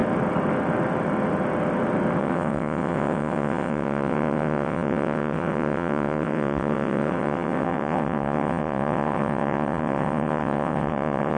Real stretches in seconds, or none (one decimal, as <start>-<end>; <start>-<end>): 0.0-2.2